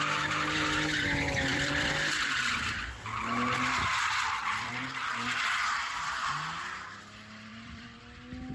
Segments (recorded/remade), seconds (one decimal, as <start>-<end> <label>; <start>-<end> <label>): 0.0-1.5 recorded; 1.5-2.1 remade; 2.1-4.4 recorded; 4.4-6.3 remade; 6.3-7.5 recorded; 7.5-8.0 remade; 8.0-8.5 recorded